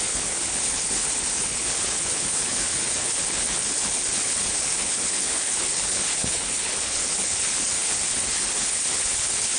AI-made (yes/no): yes